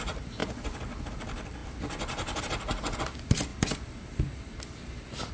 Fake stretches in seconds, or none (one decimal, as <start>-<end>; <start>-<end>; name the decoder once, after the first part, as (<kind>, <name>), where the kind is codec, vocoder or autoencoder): none